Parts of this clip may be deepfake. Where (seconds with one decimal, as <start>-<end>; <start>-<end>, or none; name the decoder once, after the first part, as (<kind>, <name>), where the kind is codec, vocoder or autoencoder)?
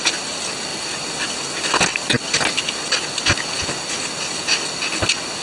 none